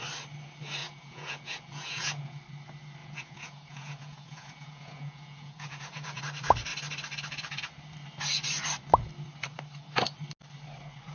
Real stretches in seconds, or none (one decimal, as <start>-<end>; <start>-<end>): 0.0-0.8; 2.4-3.0; 6.2-11.1

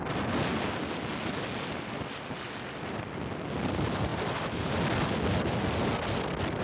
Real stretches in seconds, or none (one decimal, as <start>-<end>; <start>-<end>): 0.0-6.6

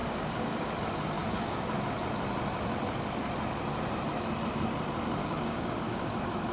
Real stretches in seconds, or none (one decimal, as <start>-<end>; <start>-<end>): 0.7-1.2; 1.7-5.2; 6.1-6.5

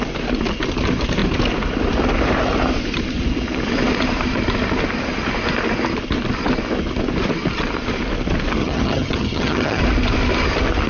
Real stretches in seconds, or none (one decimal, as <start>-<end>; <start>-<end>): 0.0-8.6; 9.8-10.9

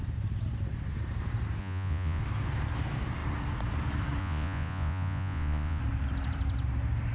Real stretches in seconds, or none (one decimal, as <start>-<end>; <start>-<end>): 0.0-1.6; 2.2-4.2; 5.8-7.1